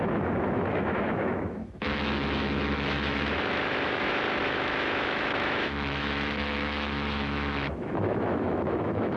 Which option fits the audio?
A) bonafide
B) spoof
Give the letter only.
B